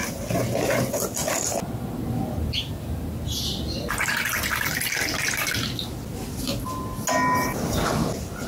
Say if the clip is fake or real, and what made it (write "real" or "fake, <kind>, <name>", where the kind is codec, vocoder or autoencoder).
real